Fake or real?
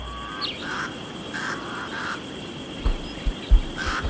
real